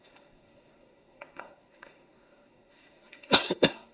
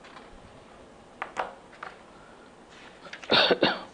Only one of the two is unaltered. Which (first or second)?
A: second